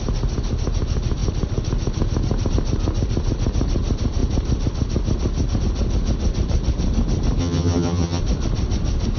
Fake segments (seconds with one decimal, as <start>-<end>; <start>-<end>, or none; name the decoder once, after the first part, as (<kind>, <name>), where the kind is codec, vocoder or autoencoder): 7.4-8.2 (vocoder, HiFi-GAN)